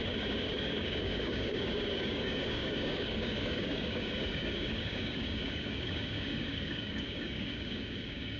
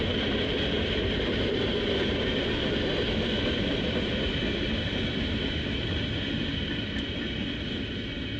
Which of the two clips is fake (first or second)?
first